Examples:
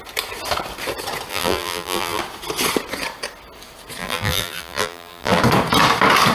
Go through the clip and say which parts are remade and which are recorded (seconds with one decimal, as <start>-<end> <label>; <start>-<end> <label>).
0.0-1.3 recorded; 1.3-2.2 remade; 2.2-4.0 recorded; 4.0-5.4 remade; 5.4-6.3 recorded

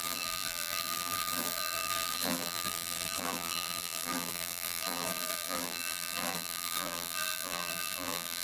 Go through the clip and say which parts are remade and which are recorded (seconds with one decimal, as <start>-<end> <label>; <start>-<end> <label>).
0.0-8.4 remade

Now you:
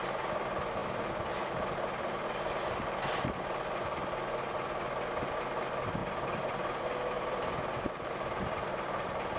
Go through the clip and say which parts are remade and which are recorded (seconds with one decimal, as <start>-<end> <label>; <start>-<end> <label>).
0.0-6.0 recorded; 6.0-9.4 remade